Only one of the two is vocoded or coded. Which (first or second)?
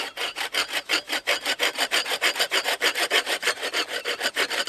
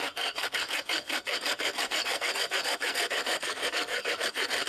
second